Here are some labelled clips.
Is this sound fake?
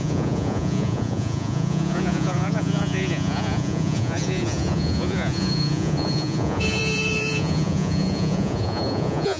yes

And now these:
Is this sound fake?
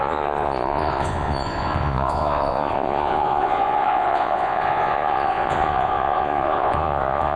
yes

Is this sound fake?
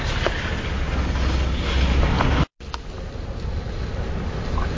no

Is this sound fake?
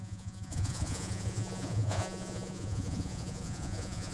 yes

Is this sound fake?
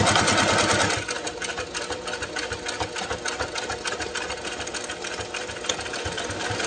no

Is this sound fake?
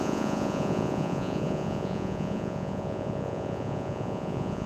yes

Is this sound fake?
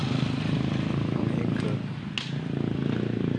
no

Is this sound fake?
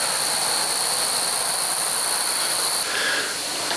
no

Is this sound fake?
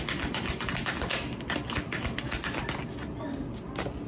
no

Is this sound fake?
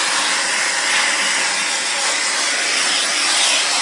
no